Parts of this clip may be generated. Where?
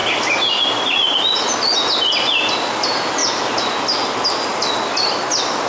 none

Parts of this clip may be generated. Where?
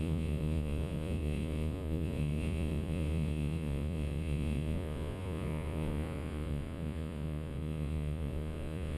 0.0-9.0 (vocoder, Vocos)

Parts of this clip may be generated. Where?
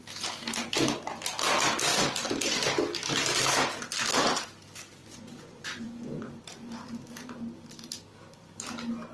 5.0-6.3 (vocoder, Vocos)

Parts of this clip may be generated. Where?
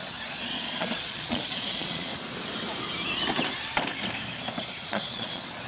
0.0-2.1 (vocoder, Vocos); 4.7-5.7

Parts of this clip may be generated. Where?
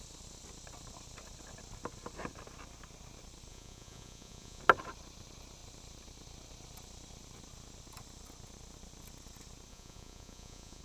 3.5-4.6 (vocoder, Vocos); 9.7-10.8